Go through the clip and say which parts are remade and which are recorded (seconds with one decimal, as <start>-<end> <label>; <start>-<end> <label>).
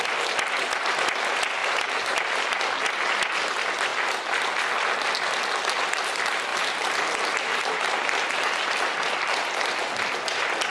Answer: 0.0-1.6 recorded; 1.6-2.6 remade; 2.6-6.5 recorded; 6.5-8.3 remade; 8.3-10.7 recorded